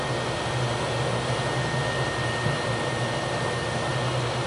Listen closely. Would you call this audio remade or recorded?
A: recorded